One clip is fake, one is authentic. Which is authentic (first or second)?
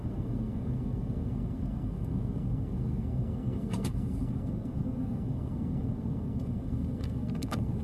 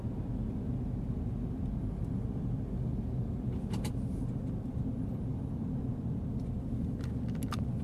second